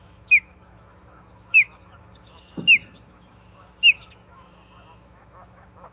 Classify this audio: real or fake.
fake